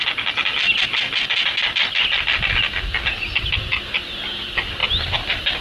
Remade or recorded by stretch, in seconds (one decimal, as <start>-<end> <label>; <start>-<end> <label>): 0.0-5.6 recorded